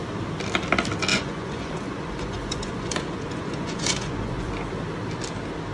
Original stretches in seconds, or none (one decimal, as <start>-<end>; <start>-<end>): 0.0-1.1; 4.5-5.7